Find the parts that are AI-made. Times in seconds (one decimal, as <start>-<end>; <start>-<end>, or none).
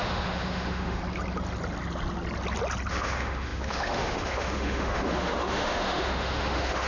0.0-1.0; 2.9-6.9